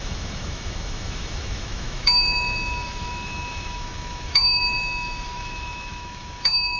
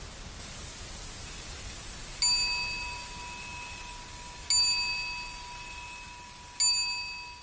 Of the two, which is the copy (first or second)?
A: first